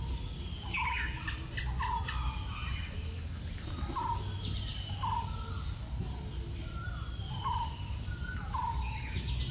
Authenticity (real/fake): real